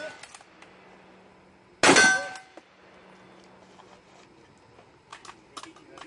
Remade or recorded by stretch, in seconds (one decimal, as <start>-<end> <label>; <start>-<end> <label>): 0.0-6.1 recorded

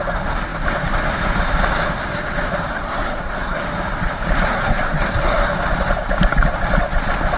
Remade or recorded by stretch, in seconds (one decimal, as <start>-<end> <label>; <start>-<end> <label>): 0.0-2.7 recorded; 2.7-3.6 remade; 3.6-4.5 recorded; 4.5-5.5 remade; 5.5-7.4 recorded

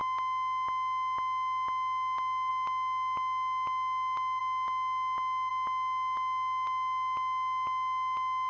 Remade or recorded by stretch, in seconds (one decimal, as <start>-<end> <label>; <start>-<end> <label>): 0.0-8.5 recorded

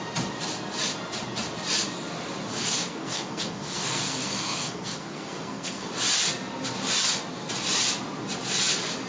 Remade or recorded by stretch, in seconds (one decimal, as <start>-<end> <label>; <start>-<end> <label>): 0.0-2.5 recorded; 2.5-5.9 remade; 5.9-9.1 recorded

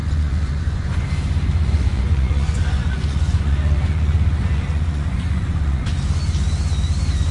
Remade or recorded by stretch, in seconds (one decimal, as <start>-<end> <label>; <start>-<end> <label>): 0.0-1.1 remade; 1.1-1.6 recorded; 1.6-6.0 remade; 6.0-7.3 recorded

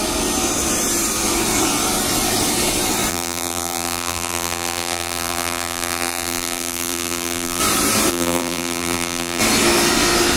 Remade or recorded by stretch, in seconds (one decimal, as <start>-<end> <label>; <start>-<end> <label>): 0.0-3.1 recorded; 3.1-7.6 remade; 7.6-8.1 recorded; 8.1-9.4 remade; 9.4-10.4 recorded

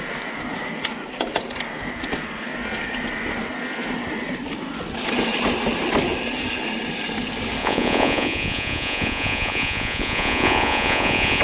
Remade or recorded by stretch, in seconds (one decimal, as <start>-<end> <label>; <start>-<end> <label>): 0.0-7.6 recorded; 7.6-11.4 remade

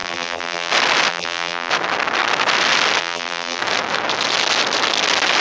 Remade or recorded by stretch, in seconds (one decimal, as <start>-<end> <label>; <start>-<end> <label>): 0.0-0.7 remade; 0.7-1.1 recorded; 1.1-1.7 remade; 1.7-3.0 recorded; 3.0-3.6 remade; 3.6-5.4 recorded